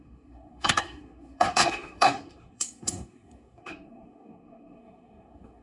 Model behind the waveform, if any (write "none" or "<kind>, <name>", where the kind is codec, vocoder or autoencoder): codec, SNAC